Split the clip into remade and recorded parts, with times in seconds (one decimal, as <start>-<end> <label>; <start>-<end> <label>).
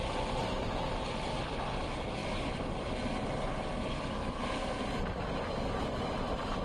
0.0-6.6 recorded